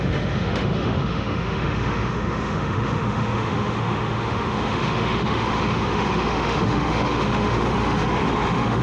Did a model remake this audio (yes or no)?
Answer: yes